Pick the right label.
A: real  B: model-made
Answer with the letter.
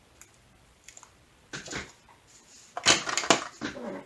A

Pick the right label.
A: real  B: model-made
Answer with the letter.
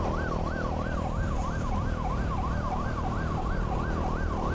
A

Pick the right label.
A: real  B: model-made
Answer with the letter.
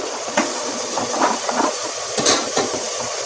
B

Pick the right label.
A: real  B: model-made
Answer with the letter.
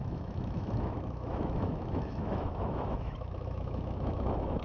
B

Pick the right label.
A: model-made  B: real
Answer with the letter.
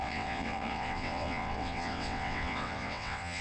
A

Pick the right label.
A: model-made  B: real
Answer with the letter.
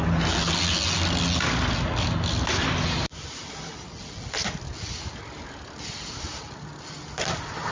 B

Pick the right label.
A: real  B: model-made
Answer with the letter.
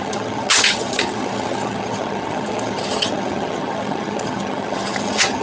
B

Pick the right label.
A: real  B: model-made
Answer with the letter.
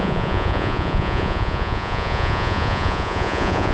B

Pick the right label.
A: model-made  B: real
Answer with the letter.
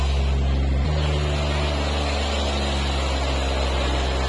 B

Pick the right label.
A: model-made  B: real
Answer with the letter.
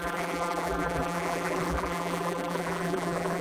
A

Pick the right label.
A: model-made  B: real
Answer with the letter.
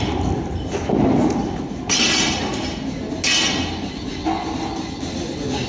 B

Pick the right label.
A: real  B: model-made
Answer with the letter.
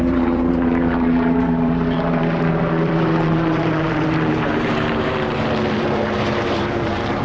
B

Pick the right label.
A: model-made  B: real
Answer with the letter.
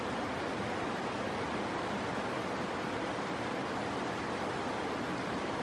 B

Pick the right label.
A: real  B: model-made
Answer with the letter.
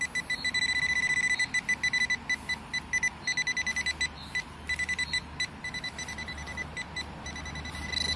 A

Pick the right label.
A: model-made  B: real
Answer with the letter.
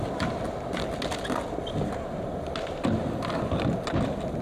B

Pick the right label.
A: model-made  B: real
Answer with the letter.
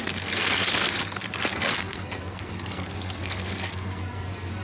A